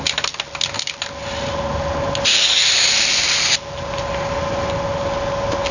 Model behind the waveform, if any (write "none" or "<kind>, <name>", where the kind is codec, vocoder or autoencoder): none